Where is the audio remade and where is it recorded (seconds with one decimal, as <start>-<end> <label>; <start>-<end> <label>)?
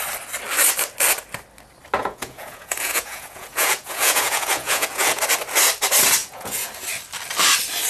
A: 0.0-2.0 recorded; 2.0-5.2 remade; 5.2-6.2 recorded; 6.2-6.7 remade; 6.7-7.9 recorded